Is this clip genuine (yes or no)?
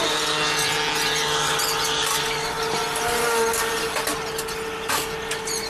yes